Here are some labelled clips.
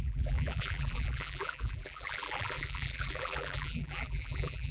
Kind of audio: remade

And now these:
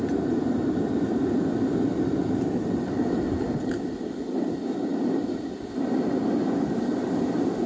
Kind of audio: recorded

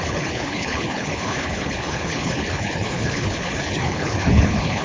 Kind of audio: remade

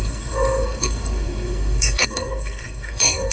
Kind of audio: remade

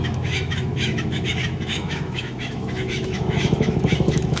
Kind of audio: remade